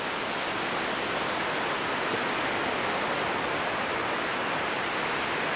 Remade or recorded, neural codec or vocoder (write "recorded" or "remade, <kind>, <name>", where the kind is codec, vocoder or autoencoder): recorded